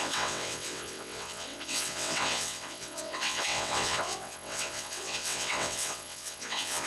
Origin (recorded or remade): remade